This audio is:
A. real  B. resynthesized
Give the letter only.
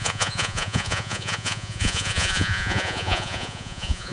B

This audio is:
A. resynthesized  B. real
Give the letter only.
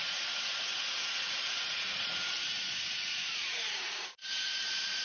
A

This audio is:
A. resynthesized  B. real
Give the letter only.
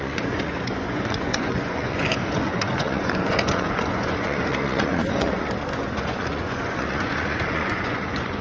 A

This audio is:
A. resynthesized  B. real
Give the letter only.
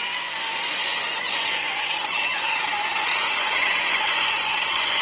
A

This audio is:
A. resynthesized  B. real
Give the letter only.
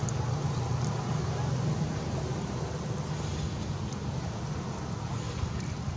B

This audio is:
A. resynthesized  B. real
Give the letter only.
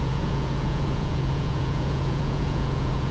A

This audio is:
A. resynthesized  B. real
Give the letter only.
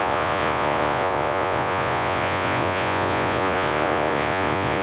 A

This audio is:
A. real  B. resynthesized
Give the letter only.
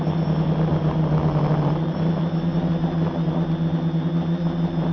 A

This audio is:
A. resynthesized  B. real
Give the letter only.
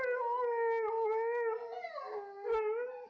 B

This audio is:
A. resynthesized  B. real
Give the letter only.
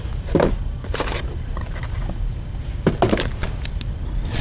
B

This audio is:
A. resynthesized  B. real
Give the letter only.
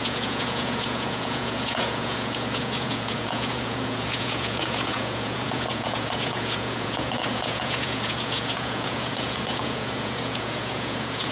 A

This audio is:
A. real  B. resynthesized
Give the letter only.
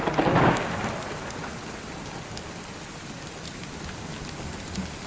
A